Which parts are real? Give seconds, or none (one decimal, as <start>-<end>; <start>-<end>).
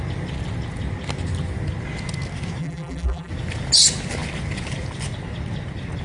0.0-2.6; 3.3-6.0